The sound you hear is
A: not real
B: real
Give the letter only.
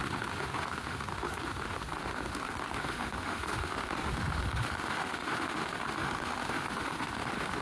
A